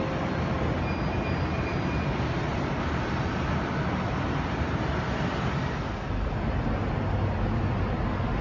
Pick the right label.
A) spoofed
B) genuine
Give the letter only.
B